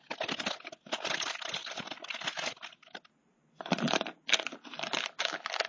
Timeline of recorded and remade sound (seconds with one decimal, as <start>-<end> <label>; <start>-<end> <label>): 0.0-5.7 recorded